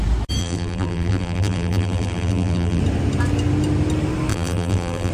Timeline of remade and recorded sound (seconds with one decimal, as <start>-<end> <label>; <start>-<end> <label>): 0.0-0.4 recorded; 0.4-2.8 remade; 2.8-4.3 recorded; 4.3-5.1 remade